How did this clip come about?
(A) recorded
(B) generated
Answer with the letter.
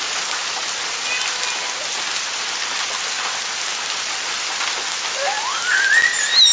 A